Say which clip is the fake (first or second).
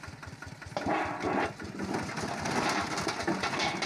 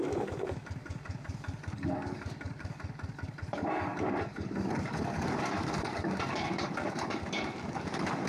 second